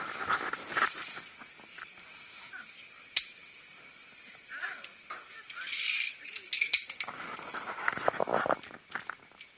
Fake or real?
real